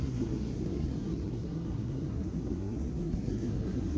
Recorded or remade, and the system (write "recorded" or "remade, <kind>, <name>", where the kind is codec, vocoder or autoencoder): remade, codec, SNAC